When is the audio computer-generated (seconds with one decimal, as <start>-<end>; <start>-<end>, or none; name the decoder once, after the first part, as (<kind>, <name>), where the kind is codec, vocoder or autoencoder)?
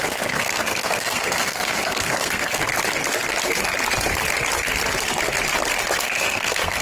0.0-2.7 (codec, SNAC); 6.0-6.8